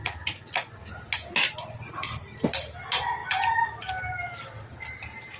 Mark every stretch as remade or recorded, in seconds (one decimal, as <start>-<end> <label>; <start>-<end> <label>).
0.0-5.4 recorded